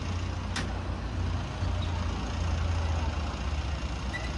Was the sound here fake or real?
real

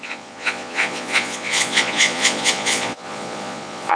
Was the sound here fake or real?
fake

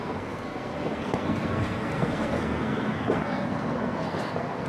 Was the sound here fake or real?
fake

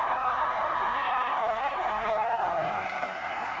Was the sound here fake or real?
fake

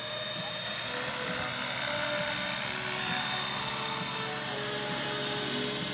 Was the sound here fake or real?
real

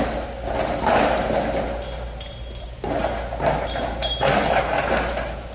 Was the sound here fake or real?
real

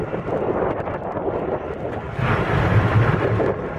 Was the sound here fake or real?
fake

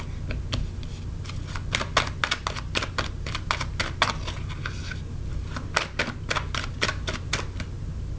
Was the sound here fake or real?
real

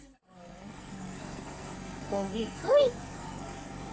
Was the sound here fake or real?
fake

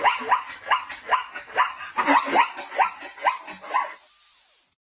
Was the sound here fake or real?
real